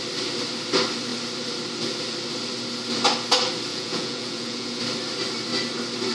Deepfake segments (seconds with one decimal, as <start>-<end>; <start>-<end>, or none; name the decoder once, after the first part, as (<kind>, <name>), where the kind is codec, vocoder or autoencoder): 3.7-4.8 (vocoder, Vocos)